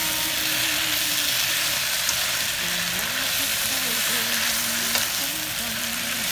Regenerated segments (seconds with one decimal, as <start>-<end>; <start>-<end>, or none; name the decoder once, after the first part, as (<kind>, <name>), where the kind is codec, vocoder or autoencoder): 3.5-4.1 (vocoder, BigVGAN v2)